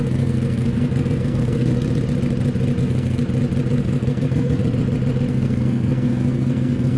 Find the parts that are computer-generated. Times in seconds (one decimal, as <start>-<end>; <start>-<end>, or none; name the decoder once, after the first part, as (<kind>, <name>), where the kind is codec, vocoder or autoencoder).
0.0-1.7 (codec, SNAC); 2.8-3.2; 3.7-4.6; 5.3-7.0